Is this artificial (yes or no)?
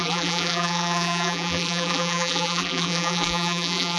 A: yes